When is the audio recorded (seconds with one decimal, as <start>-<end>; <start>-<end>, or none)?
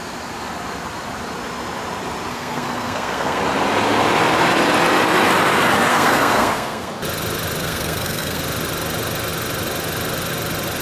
0.0-2.3; 3.4-5.9; 6.9-7.6; 8.4-10.8